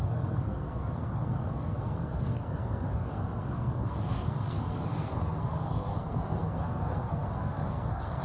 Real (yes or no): no